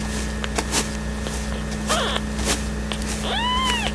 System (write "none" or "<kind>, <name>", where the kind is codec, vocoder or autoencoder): none